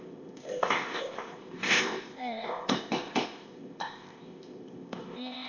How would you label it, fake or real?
fake